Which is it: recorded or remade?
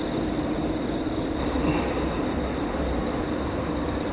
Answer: recorded